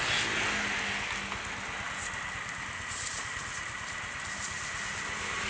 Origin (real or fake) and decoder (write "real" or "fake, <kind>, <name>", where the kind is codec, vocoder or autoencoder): real